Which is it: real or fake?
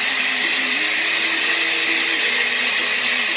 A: real